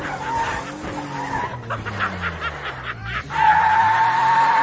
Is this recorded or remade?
recorded